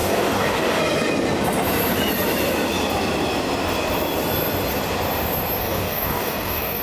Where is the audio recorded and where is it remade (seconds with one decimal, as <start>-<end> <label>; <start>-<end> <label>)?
0.0-0.8 remade; 0.8-5.6 recorded; 5.6-6.8 remade